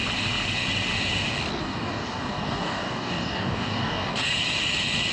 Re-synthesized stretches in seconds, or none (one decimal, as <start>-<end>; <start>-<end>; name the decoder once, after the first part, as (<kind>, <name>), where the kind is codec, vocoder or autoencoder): 1.6-4.2 (codec, DAC)